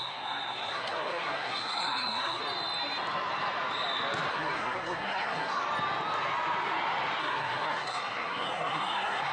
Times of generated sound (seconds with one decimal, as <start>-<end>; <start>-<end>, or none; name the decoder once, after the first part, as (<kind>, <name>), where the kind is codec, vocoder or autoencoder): 0.0-2.4 (codec, SNAC); 4.3-5.6; 7.2-9.3